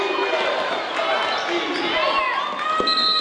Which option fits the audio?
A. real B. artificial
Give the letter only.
A